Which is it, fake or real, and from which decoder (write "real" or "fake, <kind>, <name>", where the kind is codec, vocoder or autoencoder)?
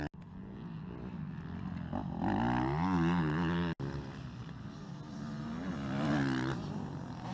real